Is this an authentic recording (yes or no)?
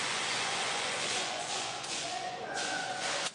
no